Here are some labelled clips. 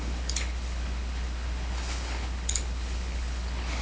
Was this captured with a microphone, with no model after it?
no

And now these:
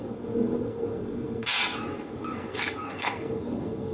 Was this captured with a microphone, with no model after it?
no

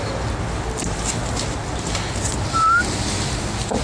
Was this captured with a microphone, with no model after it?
yes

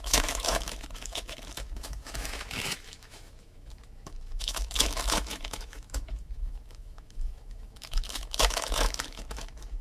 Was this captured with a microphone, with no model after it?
no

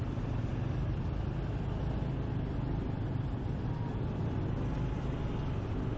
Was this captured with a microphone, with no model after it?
yes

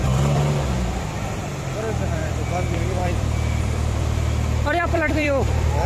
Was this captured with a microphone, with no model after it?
no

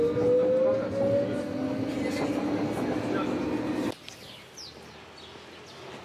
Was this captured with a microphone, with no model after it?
yes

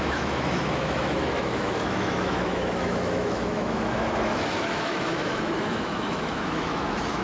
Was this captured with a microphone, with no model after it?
no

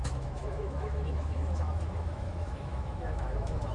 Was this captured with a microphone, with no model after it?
no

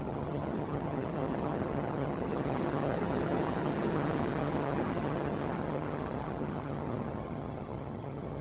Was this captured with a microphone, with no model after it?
no